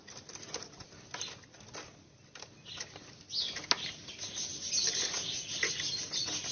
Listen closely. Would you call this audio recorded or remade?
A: recorded